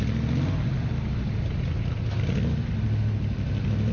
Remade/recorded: recorded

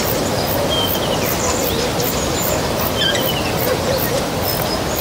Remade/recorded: recorded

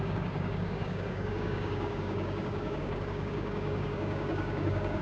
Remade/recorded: remade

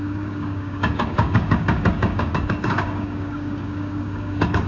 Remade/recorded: remade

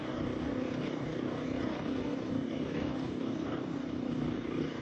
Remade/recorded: remade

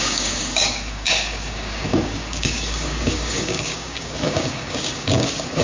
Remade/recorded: remade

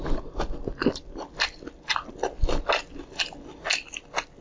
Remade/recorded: recorded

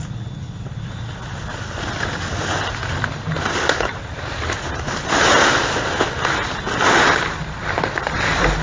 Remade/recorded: recorded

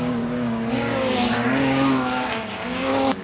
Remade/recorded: remade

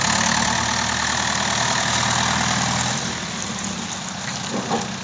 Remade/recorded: recorded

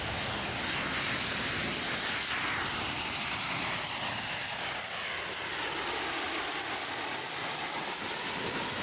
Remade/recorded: recorded